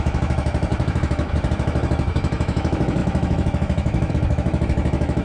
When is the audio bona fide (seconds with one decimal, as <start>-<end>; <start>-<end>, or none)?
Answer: none